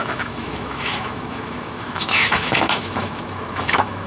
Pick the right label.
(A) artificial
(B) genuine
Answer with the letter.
A